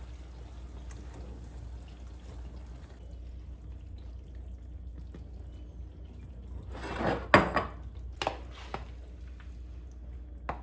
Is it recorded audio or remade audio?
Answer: recorded